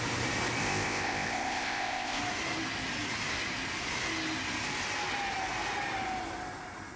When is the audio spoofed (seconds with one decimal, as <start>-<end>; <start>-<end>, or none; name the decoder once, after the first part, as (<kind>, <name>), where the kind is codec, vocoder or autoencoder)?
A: 0.6-2.2 (codec, ZipCodec)

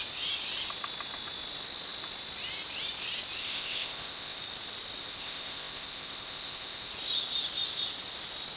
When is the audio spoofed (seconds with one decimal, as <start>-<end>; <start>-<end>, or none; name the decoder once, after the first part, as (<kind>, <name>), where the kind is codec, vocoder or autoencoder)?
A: 3.4-4.4 (codec, ZipCodec); 5.0-6.9

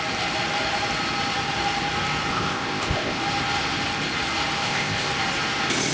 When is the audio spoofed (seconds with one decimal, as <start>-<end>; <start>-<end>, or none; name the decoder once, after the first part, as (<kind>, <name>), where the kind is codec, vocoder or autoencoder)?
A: 2.3-3.2 (codec, ZipCodec); 4.6-5.1